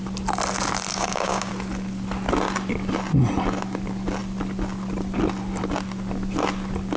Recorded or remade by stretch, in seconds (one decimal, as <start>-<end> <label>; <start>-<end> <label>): 0.0-0.9 recorded; 0.9-1.5 remade; 1.5-7.0 recorded